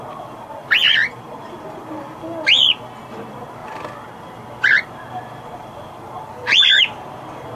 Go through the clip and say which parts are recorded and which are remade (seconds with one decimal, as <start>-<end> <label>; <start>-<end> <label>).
0.0-0.9 recorded; 0.9-1.8 remade; 1.8-7.6 recorded